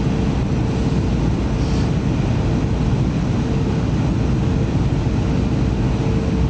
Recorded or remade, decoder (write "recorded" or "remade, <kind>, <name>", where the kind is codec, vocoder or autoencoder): recorded